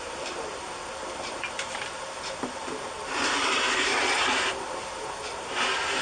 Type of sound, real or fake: fake